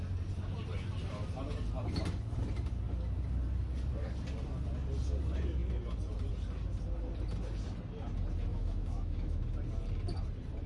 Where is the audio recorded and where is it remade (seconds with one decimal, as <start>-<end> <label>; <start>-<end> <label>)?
0.0-8.5 recorded; 8.5-9.4 remade; 9.4-10.7 recorded